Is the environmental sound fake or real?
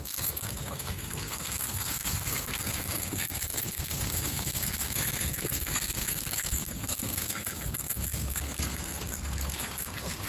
fake